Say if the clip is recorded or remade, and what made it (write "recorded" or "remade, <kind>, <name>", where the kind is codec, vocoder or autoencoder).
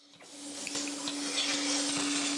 recorded